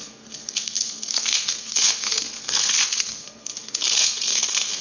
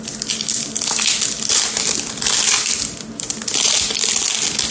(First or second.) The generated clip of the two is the first